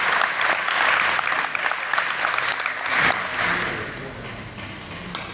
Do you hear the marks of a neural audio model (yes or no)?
no